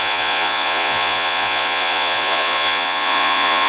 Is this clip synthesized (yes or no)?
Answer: yes